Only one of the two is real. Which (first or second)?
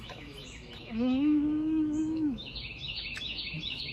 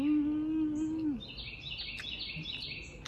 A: second